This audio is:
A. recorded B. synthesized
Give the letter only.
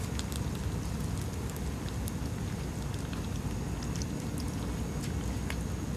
A